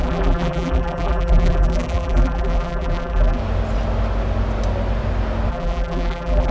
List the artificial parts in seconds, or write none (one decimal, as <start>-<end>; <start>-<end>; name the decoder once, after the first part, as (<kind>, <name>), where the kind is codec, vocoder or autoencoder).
0.0-3.4 (vocoder, BigVGAN v2); 5.5-6.5